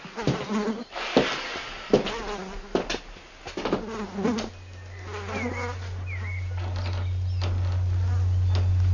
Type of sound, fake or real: real